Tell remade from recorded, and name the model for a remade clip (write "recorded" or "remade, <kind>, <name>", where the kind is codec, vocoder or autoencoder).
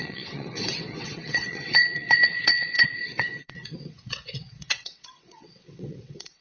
remade, vocoder, WaveNeXt